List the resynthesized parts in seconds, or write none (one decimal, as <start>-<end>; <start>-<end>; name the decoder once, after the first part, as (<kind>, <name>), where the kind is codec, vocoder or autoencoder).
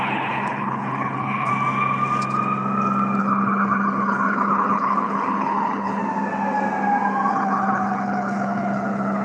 0.0-1.5 (codec, HILCodec); 3.2-6.0; 7.3-9.2